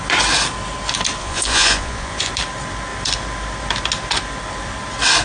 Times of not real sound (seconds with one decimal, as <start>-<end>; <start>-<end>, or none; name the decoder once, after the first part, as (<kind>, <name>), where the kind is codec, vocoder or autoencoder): 1.2-2.3 (vocoder, Vocos)